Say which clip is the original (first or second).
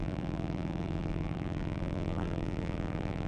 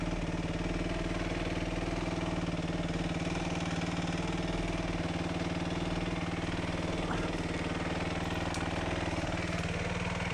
second